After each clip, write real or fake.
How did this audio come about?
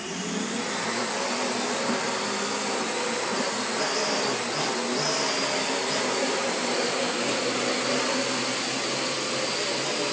real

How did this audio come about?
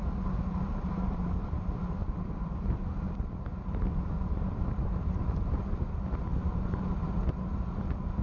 real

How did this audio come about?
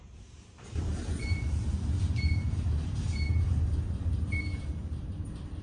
fake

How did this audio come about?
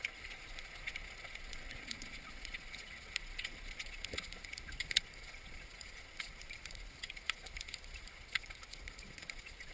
fake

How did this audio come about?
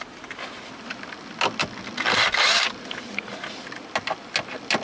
real